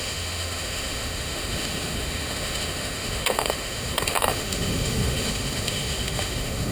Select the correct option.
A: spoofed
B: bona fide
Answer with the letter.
A